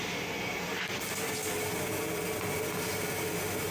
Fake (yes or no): no